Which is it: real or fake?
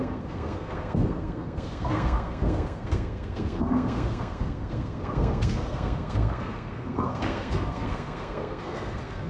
fake